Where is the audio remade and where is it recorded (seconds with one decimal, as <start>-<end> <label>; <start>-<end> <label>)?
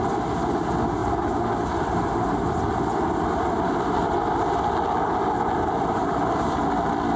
0.0-6.0 recorded; 6.0-6.6 remade; 6.6-7.2 recorded